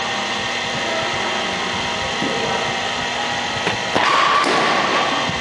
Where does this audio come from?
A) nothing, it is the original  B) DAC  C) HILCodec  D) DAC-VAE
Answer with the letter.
A